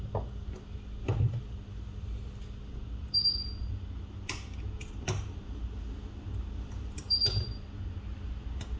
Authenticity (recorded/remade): recorded